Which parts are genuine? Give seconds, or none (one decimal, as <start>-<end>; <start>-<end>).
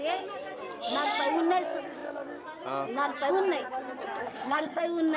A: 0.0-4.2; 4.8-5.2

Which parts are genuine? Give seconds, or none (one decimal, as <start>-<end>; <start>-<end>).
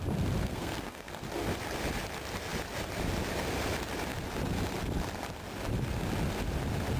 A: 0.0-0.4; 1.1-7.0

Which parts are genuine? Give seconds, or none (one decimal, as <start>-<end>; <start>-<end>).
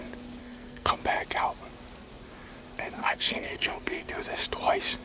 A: 0.0-0.4; 0.9-3.0; 4.1-5.0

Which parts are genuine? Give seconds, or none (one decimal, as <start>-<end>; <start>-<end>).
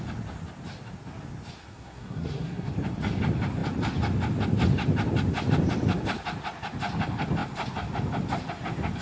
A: 0.0-1.6; 2.7-9.0